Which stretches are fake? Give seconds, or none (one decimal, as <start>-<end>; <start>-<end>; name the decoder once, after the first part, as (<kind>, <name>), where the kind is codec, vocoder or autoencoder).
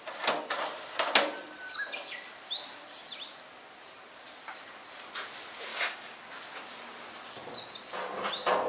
5.7-6.2 (codec, DAC)